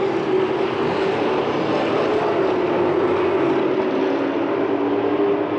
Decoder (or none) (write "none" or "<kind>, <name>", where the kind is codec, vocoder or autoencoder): none